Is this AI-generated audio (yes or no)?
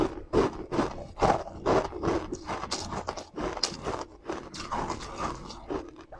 no